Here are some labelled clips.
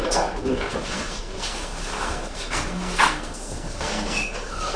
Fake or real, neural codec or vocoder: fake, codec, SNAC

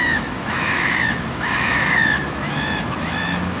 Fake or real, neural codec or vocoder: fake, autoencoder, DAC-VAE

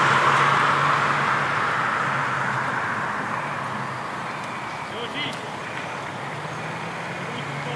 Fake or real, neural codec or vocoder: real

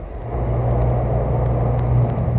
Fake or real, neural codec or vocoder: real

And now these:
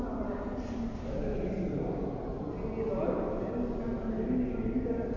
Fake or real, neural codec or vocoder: real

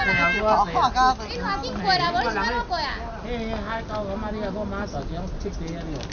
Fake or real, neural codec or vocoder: real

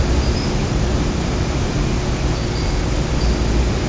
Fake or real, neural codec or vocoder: real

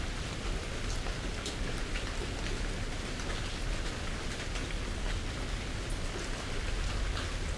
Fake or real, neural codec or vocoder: real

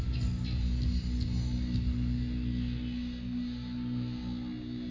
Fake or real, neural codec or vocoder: real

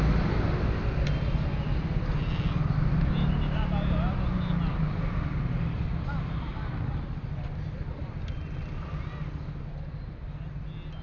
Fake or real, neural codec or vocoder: real